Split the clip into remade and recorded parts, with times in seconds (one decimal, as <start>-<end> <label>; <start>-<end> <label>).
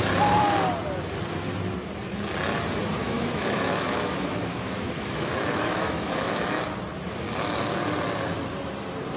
0.0-3.0 recorded; 3.0-6.6 remade; 6.6-9.2 recorded